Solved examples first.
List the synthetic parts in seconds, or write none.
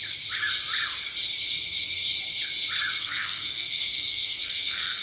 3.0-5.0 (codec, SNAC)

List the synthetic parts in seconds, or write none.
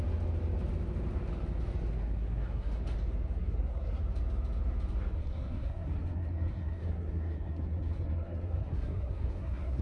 2.0-2.8 (codec, SNAC); 3.4-4.0; 5.2-9.8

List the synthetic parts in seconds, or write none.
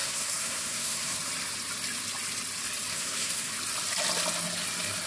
0.0-1.2 (codec, SNAC); 2.9-3.5